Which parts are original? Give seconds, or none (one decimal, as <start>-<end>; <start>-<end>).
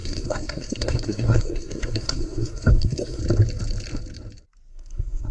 3.2-4.7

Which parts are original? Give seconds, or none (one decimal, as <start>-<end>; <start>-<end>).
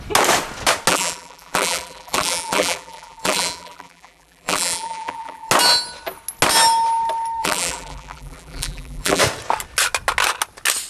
0.0-0.9; 5.5-7.4; 9.2-10.9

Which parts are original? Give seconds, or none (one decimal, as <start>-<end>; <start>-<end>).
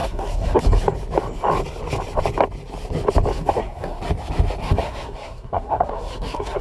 0.6-3.3; 4.0-4.6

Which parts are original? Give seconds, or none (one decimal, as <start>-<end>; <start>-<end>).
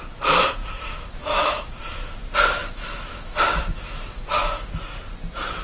0.0-0.6; 1.8-2.6; 4.6-5.6